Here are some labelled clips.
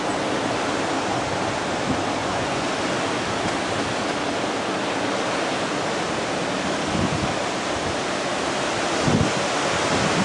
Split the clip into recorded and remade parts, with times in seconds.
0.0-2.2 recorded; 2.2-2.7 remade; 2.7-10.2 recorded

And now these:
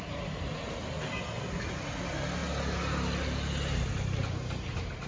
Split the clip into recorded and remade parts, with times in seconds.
0.0-5.1 recorded

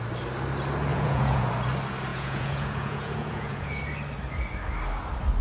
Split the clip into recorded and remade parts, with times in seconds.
0.0-0.9 recorded; 0.9-1.5 remade; 1.5-2.1 recorded; 2.1-3.8 remade; 3.8-5.4 recorded

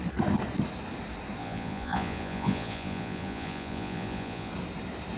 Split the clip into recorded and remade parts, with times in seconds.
0.0-1.4 recorded; 1.4-4.5 remade; 4.5-5.2 recorded

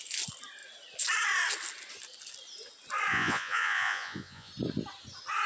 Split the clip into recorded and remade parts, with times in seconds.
0.0-3.1 recorded; 3.1-4.5 remade; 4.5-5.5 recorded

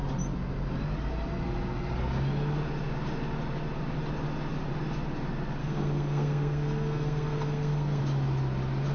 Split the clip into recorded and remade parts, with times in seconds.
0.0-5.6 recorded; 5.6-8.0 remade; 8.0-8.9 recorded

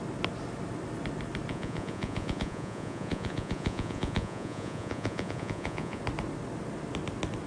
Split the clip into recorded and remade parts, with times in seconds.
0.0-1.5 recorded; 1.5-6.0 remade; 6.0-7.5 recorded